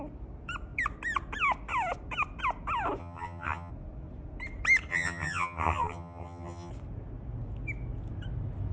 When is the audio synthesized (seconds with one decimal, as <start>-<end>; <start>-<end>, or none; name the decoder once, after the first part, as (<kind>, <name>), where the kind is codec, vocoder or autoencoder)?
3.0-3.7 (vocoder, HiFi-GAN); 4.9-6.7